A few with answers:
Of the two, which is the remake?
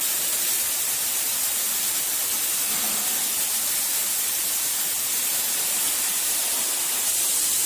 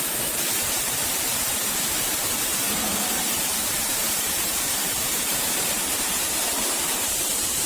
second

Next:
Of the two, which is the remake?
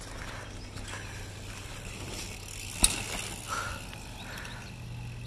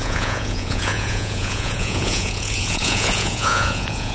second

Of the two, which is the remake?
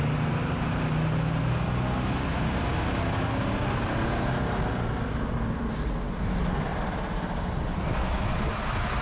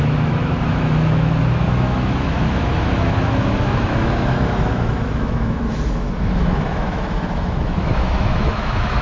second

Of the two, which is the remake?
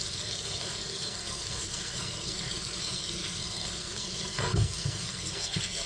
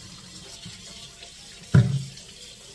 first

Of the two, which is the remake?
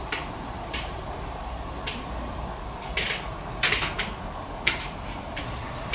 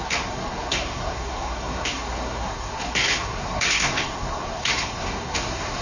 second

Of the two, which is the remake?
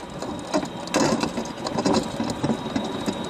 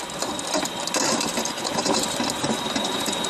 second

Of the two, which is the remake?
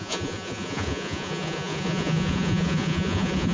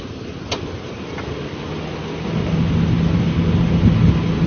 first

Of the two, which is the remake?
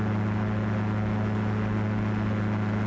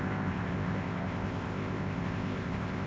second